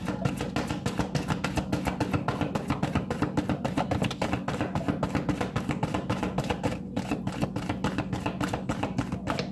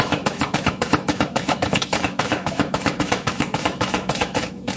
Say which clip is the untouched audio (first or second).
first